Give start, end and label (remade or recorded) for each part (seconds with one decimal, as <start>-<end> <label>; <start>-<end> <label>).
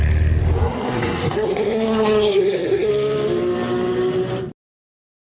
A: 0.0-0.6 recorded; 0.6-2.9 remade; 2.9-5.3 recorded